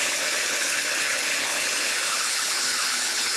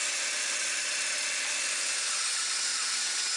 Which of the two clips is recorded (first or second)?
second